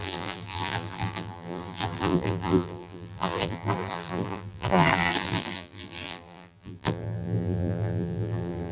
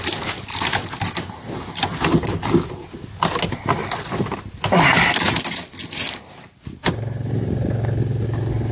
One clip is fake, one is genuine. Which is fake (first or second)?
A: first